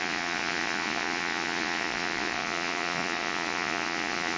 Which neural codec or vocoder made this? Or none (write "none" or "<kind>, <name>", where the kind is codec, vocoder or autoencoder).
vocoder, Vocos